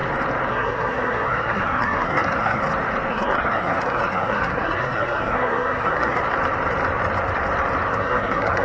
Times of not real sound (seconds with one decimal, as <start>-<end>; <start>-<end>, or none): 0.5-2.6; 3.1-6.2; 7.9-8.6